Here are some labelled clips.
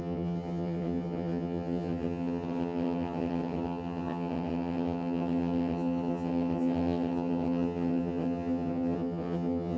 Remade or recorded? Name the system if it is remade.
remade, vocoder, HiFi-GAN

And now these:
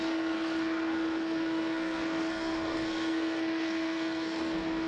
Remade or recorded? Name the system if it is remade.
remade, codec, SNAC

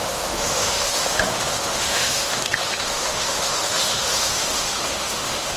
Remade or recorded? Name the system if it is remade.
remade, autoencoder, DAC-VAE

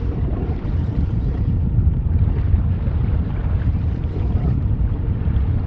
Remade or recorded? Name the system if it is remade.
remade, vocoder, BigVGAN v2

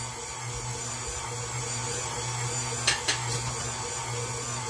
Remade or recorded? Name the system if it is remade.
recorded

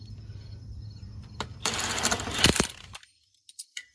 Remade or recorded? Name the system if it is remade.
remade, vocoder, BigVGAN v2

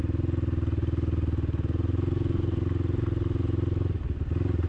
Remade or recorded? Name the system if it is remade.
recorded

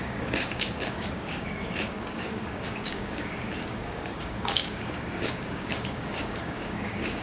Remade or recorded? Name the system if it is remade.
remade, codec, DAC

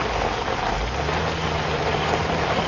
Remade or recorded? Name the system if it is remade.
recorded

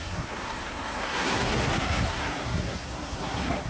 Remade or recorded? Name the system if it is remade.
remade, codec, SNAC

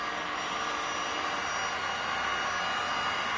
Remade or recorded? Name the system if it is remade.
recorded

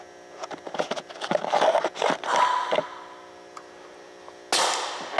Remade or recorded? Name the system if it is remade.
recorded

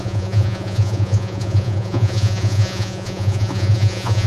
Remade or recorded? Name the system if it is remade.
remade, vocoder, Vocos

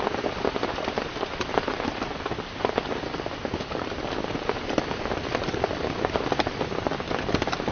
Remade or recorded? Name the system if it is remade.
remade, vocoder, BigVGAN v2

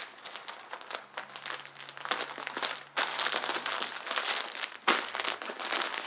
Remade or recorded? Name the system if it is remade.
recorded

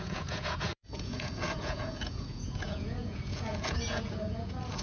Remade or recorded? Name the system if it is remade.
remade, vocoder, Vocos